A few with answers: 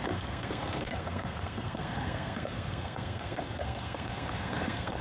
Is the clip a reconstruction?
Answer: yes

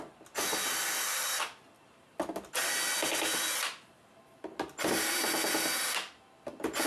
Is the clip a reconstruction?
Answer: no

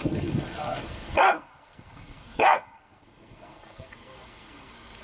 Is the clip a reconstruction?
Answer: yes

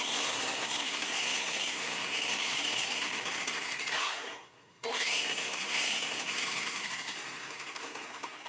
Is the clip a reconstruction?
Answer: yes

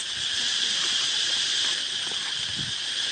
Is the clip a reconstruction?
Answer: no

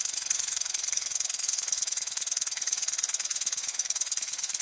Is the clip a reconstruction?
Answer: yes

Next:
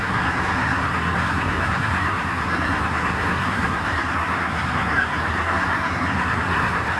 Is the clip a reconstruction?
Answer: yes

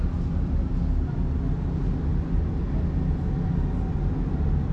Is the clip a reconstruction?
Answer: no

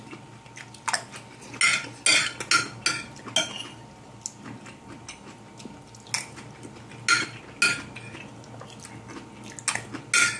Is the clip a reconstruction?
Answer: no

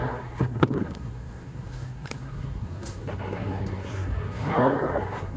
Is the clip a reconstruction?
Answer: yes